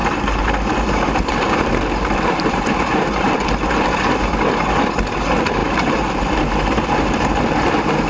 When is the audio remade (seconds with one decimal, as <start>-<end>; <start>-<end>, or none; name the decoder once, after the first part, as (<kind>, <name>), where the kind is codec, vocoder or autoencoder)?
0.0-4.4 (vocoder, BigVGAN v2); 5.6-8.1